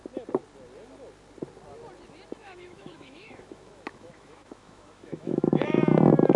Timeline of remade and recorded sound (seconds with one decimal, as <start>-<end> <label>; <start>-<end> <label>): 0.0-2.4 recorded; 2.4-5.8 remade; 5.8-6.4 recorded